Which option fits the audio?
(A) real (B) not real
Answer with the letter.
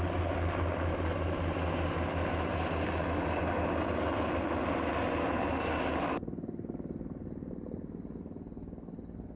A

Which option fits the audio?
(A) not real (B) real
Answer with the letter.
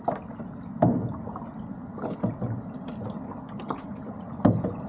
B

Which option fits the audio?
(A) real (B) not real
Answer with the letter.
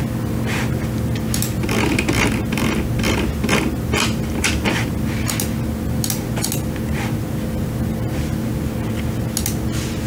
A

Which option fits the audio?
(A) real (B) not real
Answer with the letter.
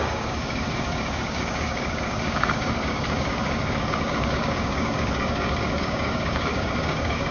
B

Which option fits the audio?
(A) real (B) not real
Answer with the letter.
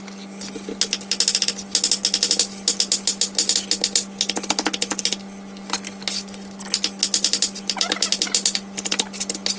A